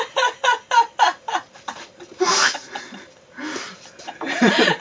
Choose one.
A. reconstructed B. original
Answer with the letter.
A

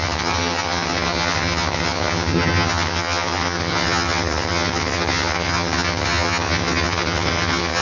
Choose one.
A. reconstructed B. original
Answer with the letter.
A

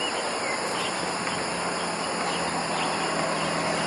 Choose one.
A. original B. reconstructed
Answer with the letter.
A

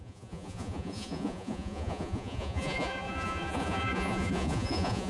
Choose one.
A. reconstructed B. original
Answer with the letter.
A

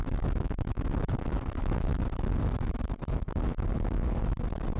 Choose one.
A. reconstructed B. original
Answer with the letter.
A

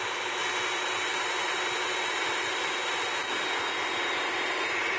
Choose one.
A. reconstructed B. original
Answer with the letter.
B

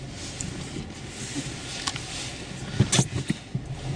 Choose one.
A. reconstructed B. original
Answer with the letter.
B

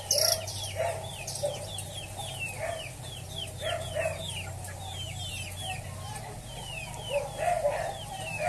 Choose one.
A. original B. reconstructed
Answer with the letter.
A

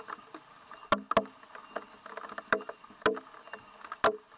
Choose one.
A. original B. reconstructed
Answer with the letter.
A